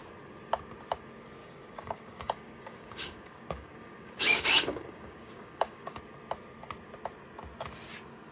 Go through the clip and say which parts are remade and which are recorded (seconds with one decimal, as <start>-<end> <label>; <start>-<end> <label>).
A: 0.0-1.4 recorded; 1.4-6.0 remade; 6.0-8.3 recorded